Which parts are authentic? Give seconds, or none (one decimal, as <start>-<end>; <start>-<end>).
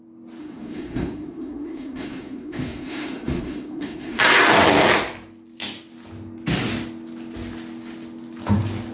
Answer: 0.0-0.4; 4.2-8.9